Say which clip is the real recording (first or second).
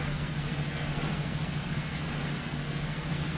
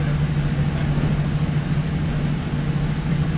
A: second